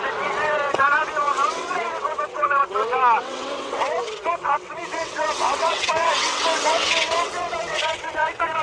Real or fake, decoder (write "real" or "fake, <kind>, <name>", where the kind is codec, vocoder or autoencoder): fake, vocoder, WaveNeXt